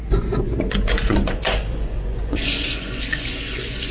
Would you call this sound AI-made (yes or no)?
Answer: yes